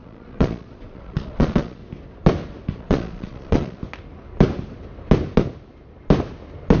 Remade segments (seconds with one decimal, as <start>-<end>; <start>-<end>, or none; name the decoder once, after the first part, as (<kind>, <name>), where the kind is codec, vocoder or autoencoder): 0.0-1.8 (vocoder, Vocos); 2.8-3.8